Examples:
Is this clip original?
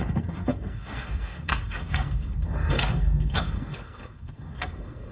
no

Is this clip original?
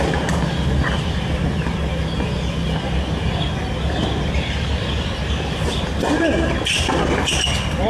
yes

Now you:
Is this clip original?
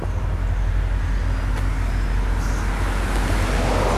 yes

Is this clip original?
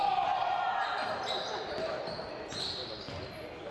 yes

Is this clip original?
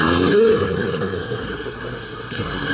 no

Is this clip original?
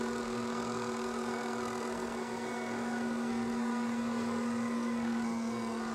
no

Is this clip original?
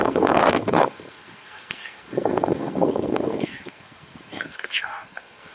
no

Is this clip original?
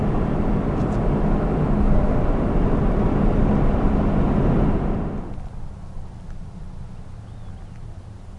yes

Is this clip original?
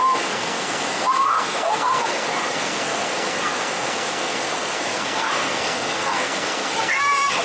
no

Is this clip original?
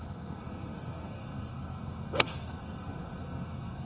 no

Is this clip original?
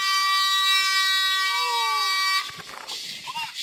yes